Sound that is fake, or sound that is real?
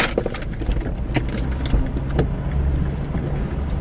real